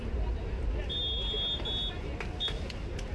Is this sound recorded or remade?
recorded